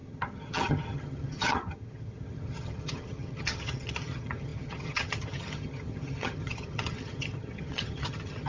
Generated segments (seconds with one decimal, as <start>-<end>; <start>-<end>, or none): 0.0-8.5